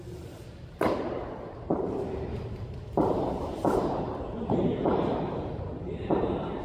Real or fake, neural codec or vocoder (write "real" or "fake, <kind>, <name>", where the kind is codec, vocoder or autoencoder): fake, vocoder, BigVGAN v2